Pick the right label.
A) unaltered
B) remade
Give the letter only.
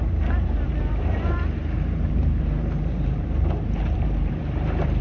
B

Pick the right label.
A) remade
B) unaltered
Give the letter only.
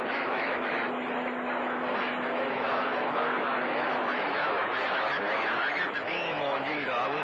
A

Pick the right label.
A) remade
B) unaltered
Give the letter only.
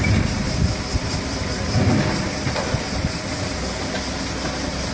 B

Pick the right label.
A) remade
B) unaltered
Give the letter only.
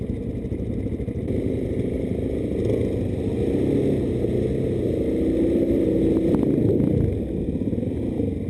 B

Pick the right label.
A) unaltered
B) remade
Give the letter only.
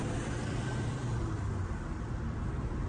B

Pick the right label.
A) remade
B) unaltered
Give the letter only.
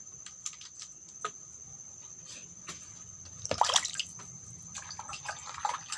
B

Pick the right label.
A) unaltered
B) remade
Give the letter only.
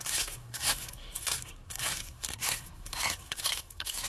B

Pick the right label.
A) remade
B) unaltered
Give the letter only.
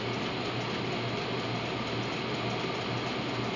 B